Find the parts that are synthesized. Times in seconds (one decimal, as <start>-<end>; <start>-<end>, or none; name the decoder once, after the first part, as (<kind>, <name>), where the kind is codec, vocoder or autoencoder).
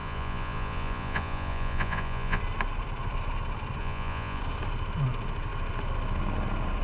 0.0-2.4 (vocoder, Vocos); 3.8-4.4